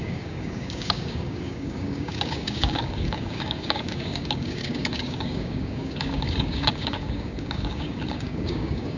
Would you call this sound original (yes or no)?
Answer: no